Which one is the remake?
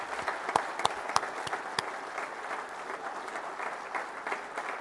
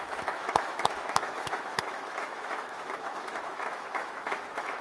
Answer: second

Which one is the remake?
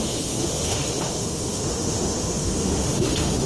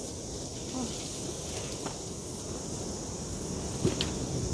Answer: first